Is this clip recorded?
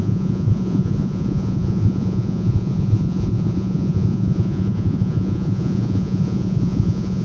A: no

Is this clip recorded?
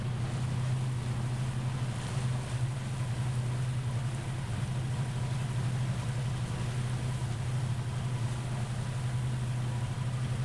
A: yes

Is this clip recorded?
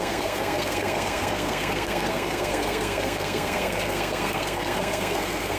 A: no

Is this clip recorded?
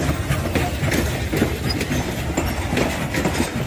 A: yes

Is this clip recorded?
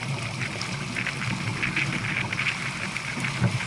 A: yes